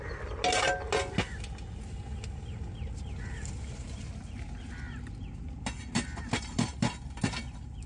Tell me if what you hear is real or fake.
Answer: real